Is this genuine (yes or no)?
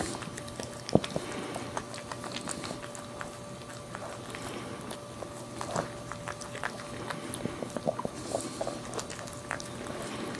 yes